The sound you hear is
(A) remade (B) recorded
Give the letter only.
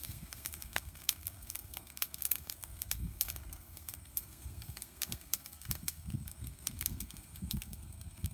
A